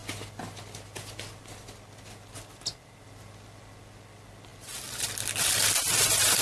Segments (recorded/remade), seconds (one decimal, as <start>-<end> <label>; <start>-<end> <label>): 0.0-6.4 recorded